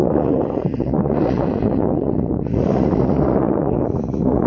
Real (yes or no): no